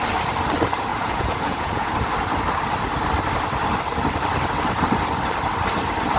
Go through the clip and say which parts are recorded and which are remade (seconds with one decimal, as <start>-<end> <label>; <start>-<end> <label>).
0.0-0.9 recorded; 0.9-1.9 remade; 1.9-6.2 recorded

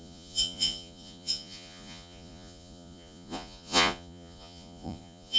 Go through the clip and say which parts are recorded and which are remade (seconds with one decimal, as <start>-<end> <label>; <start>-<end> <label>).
0.0-5.4 remade

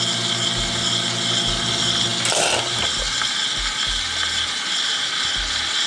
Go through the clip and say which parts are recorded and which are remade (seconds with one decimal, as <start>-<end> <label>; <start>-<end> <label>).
0.0-5.9 recorded